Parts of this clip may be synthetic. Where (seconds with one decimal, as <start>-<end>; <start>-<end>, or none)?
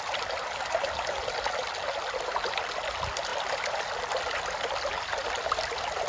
none